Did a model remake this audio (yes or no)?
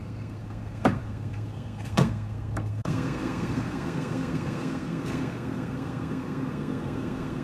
yes